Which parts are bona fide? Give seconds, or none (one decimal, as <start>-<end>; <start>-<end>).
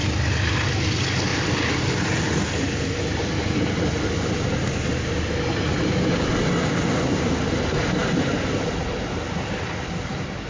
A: 0.0-10.5